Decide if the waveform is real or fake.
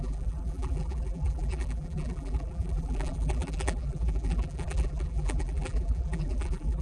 fake